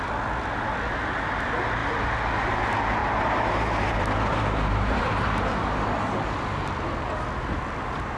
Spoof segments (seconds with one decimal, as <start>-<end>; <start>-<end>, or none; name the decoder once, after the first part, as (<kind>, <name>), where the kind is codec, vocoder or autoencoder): 3.0-6.0 (vocoder, BigVGAN v2)